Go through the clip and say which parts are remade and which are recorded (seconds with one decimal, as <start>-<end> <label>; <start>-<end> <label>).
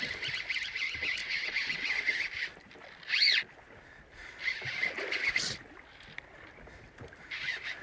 0.0-1.2 recorded; 1.2-1.9 remade; 1.9-7.8 recorded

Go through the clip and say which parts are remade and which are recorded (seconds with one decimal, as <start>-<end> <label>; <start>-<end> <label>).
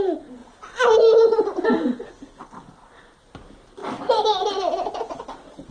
0.0-5.7 recorded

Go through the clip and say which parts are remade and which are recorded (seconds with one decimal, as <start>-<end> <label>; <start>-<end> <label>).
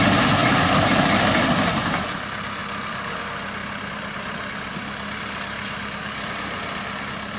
0.0-0.4 recorded; 0.4-1.8 remade; 1.8-2.6 recorded; 2.6-3.2 remade; 3.2-3.6 recorded; 3.6-6.8 remade; 6.8-7.4 recorded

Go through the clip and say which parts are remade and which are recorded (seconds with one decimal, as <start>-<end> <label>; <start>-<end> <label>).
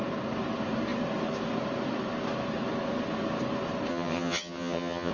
0.0-3.9 recorded; 3.9-5.1 remade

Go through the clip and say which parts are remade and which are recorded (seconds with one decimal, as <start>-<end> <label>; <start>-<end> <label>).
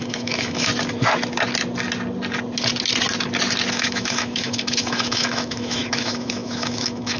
0.0-0.7 remade; 0.7-3.7 recorded; 3.7-7.2 remade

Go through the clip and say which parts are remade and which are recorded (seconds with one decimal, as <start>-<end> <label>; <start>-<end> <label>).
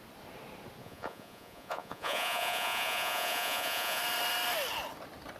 0.0-0.8 recorded; 0.8-4.0 remade; 4.0-5.4 recorded